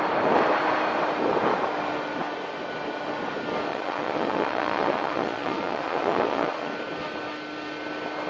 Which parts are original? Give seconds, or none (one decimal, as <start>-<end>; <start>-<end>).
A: 0.0-3.7; 6.7-8.3